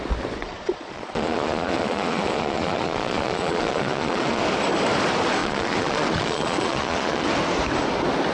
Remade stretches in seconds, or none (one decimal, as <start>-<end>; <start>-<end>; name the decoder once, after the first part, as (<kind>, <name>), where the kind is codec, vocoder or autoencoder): 0.4-4.4 (vocoder, Vocos); 5.4-7.3